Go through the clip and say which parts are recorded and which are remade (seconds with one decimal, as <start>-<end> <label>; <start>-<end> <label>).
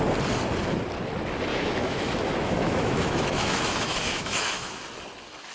0.0-1.5 recorded; 1.5-4.8 remade; 4.8-5.5 recorded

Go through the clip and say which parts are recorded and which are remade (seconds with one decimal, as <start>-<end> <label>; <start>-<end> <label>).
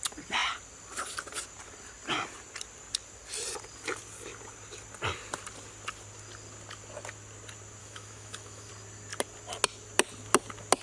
0.0-7.8 recorded; 7.8-8.7 remade; 8.7-10.8 recorded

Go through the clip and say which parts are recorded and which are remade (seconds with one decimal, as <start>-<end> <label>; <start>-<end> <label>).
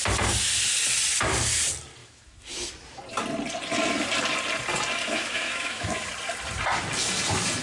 0.0-2.0 recorded; 2.0-2.7 remade; 2.7-5.0 recorded; 5.0-6.1 remade; 6.1-7.6 recorded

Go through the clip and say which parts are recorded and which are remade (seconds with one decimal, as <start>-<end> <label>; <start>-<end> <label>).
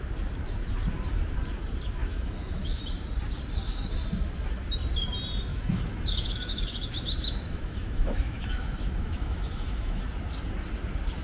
0.0-2.0 recorded; 2.0-2.8 remade; 2.8-5.5 recorded; 5.5-10.0 remade; 10.0-11.2 recorded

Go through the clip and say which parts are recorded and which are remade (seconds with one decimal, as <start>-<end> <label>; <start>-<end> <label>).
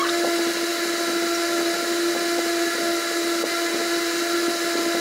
0.0-5.0 recorded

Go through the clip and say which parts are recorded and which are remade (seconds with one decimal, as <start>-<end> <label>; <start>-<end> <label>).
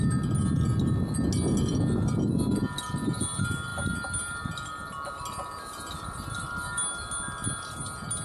0.0-8.2 recorded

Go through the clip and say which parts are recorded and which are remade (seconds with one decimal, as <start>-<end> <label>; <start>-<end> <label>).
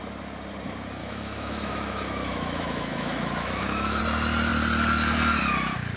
0.0-1.0 recorded; 1.0-4.0 remade; 4.0-6.0 recorded